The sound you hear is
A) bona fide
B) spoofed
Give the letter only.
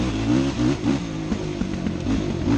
A